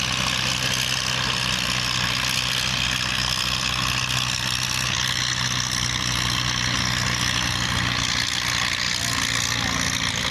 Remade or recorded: recorded